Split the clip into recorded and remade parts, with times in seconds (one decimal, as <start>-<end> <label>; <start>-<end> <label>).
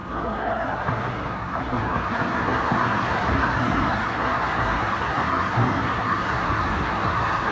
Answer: 0.0-7.5 remade